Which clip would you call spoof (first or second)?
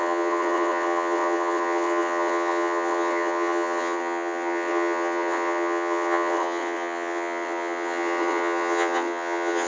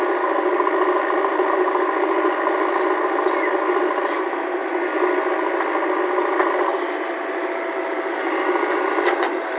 first